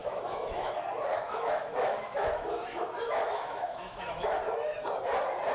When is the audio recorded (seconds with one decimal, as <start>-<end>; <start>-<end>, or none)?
0.7-1.1; 4.4-5.5

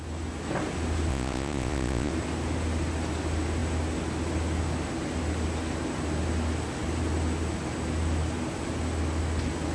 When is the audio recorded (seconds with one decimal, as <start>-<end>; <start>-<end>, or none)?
0.0-1.1; 2.1-9.7